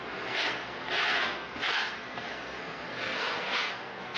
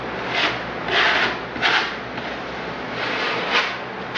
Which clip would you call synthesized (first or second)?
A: first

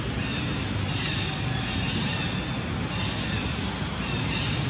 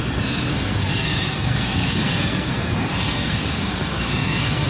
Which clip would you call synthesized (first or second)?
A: second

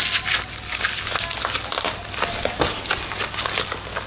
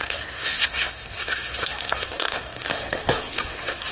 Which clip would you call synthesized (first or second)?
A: second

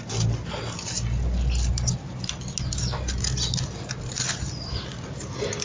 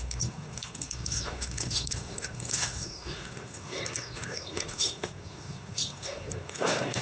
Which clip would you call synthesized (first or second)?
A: second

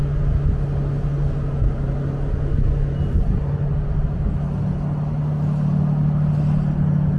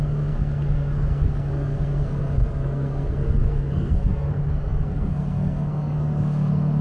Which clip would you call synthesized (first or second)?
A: second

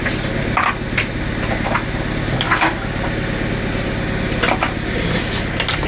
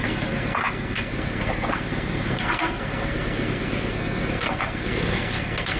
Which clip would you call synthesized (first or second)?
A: second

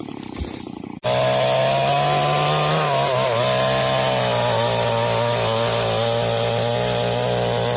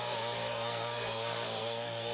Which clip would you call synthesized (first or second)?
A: second